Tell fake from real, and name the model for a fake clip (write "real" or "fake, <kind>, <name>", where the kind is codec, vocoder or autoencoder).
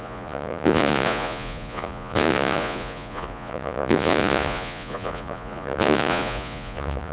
fake, vocoder, Vocos